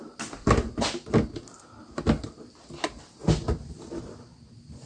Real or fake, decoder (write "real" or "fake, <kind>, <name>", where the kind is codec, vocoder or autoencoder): real